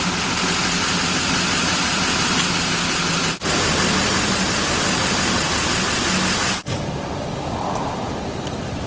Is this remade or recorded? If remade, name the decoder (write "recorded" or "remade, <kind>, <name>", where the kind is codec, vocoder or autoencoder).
recorded